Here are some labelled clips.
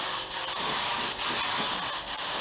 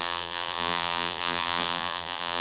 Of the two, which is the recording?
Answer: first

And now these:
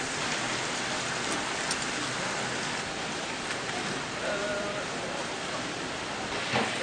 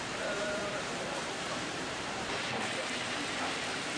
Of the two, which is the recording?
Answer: first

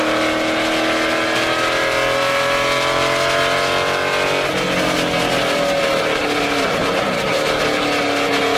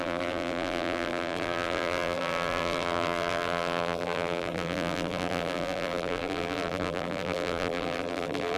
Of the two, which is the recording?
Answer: first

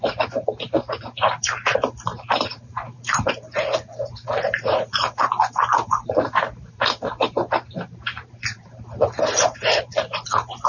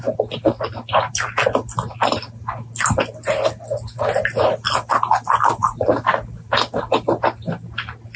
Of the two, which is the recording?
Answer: second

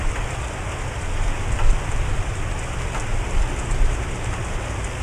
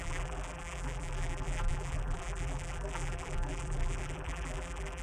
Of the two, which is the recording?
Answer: first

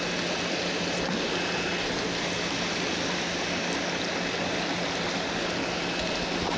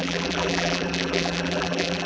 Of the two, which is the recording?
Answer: first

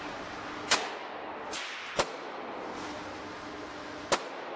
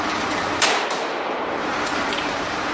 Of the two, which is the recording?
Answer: first